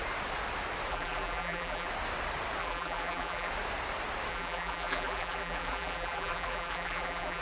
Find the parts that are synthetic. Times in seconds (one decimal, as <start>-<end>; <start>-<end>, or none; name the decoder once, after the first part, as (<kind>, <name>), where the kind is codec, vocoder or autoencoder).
0.9-1.9 (vocoder, BigVGAN v2); 2.6-3.5; 4.3-7.4